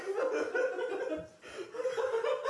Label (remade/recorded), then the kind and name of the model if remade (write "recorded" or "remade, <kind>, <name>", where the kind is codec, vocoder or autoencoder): recorded